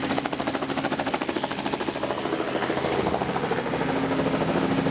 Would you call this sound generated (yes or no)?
no